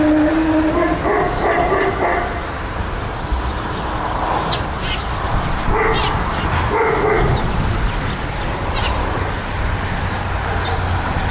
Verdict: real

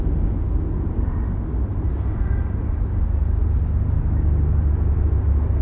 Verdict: real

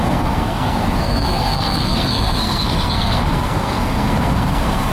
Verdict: fake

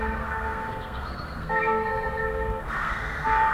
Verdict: fake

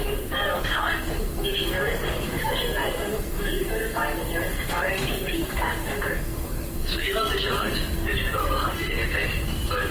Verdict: fake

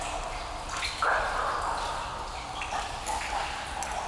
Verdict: real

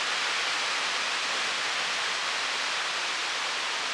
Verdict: real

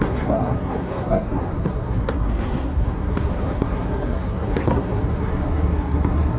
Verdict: fake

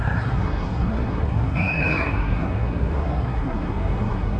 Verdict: fake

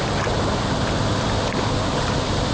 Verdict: real